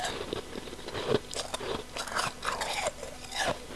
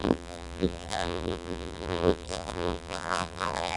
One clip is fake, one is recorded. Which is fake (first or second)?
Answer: second